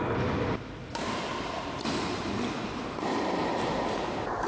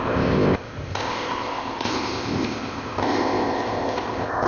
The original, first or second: first